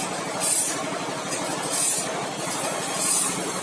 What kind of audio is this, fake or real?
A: real